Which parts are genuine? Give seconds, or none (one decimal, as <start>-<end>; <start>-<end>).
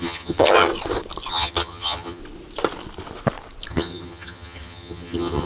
0.7-1.3; 2.2-3.7